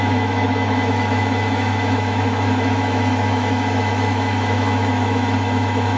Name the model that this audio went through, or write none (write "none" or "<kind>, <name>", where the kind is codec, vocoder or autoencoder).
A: autoencoder, DAC-VAE